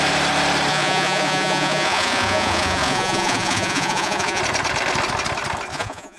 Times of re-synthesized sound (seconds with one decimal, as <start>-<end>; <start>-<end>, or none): 0.7-4.4; 5.7-6.2